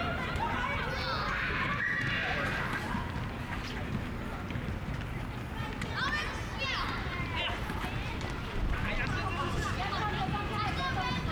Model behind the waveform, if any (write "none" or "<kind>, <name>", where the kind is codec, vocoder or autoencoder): none